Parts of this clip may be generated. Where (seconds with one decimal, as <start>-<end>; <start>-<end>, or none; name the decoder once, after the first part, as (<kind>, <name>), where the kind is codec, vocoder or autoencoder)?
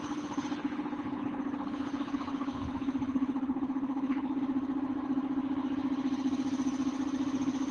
0.0-4.4 (codec, HILCodec)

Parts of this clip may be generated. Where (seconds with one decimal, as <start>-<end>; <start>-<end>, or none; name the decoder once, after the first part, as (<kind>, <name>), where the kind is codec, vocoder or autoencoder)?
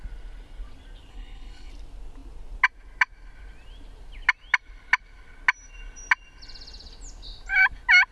1.1-1.7 (codec, HILCodec)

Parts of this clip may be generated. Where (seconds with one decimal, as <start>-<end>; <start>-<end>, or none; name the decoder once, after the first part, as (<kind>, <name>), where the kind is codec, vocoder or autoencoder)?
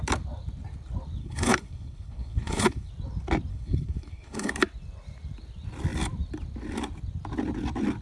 1.2-2.9 (codec, HILCodec); 3.5-4.5